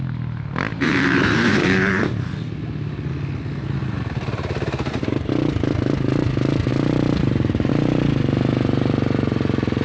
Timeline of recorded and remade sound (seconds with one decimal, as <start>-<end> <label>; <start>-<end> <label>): 0.0-0.7 recorded; 0.7-2.0 remade; 2.0-3.8 recorded; 3.8-5.3 remade; 5.3-6.7 recorded; 6.7-7.7 remade; 7.7-9.8 recorded